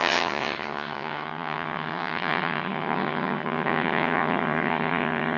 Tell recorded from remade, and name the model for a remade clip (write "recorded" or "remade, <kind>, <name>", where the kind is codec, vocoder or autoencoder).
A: remade, vocoder, HiFi-GAN